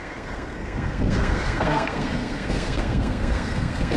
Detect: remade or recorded remade